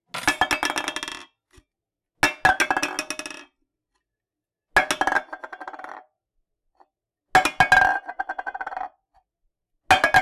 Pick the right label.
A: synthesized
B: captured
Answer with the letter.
B